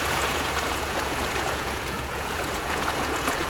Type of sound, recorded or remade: remade